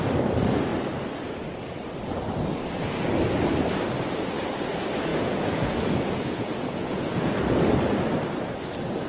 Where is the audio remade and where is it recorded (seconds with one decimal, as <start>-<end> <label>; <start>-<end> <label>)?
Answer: 0.0-5.1 recorded; 5.1-7.4 remade; 7.4-9.1 recorded